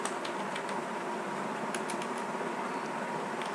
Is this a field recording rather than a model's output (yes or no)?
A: yes